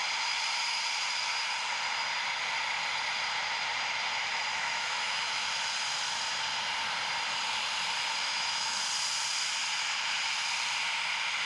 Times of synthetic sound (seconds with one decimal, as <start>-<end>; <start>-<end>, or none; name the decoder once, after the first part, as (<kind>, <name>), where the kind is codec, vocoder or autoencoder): 4.5-5.5 (autoencoder, DAC-VAE); 8.2-8.8